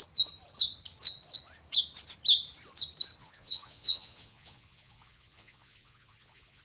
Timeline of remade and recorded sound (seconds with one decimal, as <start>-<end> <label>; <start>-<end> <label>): 0.0-3.2 recorded; 3.2-6.6 remade

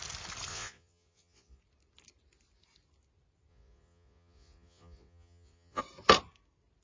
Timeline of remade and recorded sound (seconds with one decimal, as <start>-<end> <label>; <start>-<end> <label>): 0.0-0.5 recorded; 0.5-1.6 remade; 1.6-3.5 recorded; 3.5-5.8 remade; 5.8-6.8 recorded

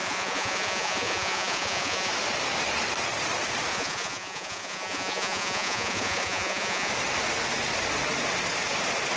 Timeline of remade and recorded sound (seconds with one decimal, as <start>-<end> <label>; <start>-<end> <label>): 0.0-2.1 remade; 2.1-3.7 recorded; 3.7-6.9 remade; 6.9-9.2 recorded